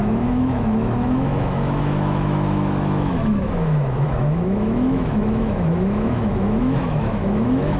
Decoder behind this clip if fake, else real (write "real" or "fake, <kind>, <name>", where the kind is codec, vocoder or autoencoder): fake, autoencoder, DAC-VAE